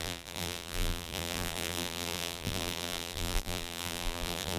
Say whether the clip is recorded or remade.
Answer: remade